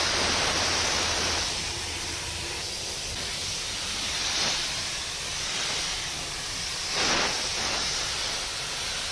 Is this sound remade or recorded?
recorded